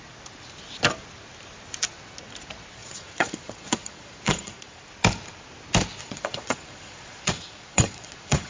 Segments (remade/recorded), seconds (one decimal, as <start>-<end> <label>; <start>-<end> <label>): 0.0-2.8 recorded; 2.8-4.8 remade; 4.8-6.0 recorded; 6.0-8.5 remade